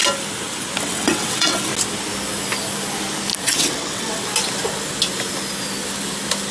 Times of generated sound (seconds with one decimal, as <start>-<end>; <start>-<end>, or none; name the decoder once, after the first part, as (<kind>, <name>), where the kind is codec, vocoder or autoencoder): 0.8-1.7 (vocoder, WaveNeXt); 3.4-4.3